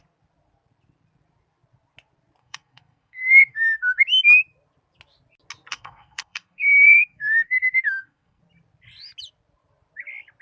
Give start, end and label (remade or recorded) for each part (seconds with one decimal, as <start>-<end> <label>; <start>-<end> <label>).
0.0-2.4 recorded; 2.4-4.0 remade; 4.0-5.7 recorded; 5.7-8.4 remade; 8.4-10.4 recorded